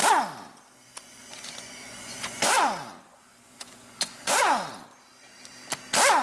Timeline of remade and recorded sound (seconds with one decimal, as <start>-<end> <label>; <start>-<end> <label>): 0.0-1.0 recorded; 1.0-4.7 remade; 4.7-6.2 recorded